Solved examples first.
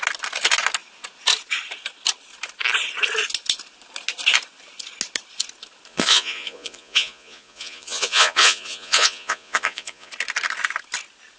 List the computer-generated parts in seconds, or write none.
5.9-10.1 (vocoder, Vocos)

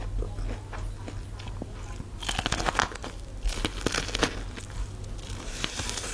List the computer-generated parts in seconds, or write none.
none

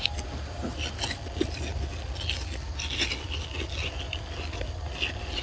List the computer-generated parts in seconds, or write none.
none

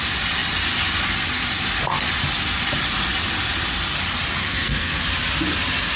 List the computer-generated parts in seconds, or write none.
4.4-5.0 (codec, SNAC)